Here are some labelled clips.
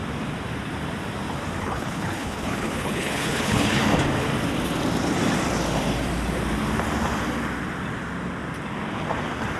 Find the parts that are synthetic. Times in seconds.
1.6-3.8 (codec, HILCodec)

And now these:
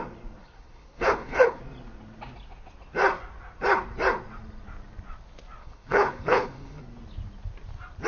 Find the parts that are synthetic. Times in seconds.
0.4-1.6 (codec, HILCodec); 5.6-6.8

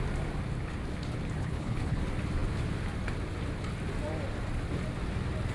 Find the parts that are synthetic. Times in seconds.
1.4-2.0 (codec, HILCodec)

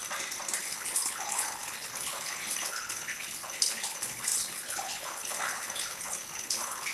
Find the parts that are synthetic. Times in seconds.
0.6-6.9 (codec, HILCodec)

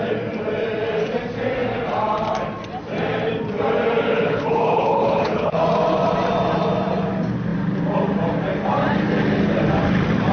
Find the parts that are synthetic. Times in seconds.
4.1-5.6 (codec, HILCodec)